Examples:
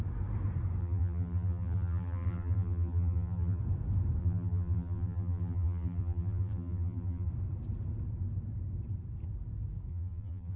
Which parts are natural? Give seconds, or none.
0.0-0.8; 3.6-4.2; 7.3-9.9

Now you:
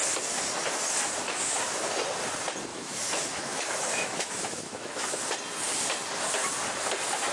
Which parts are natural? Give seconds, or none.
0.0-2.7; 5.2-7.3

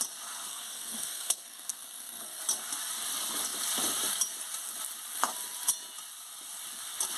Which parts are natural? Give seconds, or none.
0.0-0.5; 2.4-7.2